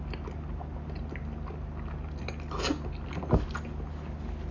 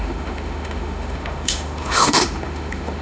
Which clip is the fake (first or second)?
second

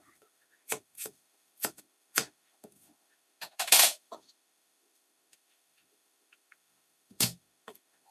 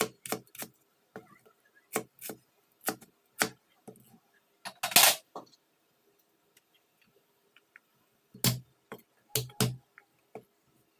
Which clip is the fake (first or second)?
first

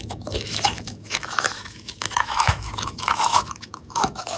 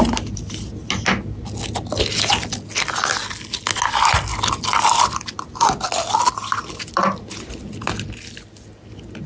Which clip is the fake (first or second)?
first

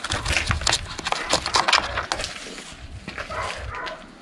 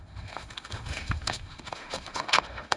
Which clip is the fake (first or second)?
second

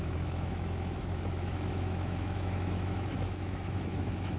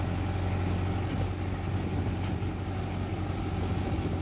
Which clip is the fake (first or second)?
first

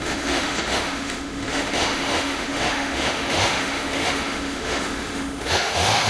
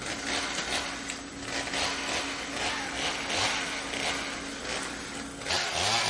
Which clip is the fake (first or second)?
first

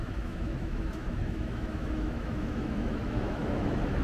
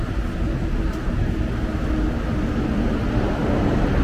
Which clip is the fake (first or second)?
first